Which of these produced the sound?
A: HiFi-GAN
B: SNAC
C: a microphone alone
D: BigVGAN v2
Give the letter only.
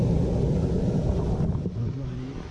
C